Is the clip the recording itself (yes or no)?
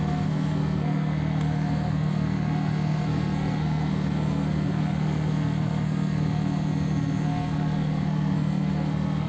no